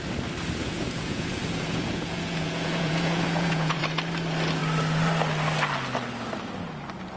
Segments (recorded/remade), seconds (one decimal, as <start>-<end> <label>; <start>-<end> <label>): 0.0-0.6 recorded; 0.6-3.8 remade; 3.8-7.2 recorded